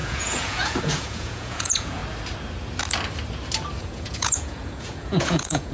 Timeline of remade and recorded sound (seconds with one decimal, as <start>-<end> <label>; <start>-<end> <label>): 0.0-2.0 remade; 2.0-3.8 recorded; 3.8-5.7 remade